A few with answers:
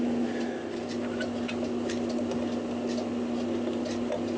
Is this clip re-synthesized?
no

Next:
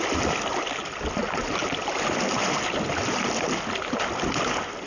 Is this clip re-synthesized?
no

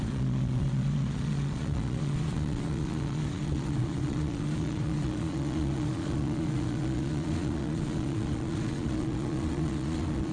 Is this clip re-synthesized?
yes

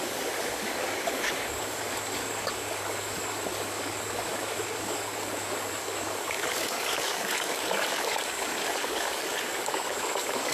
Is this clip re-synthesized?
yes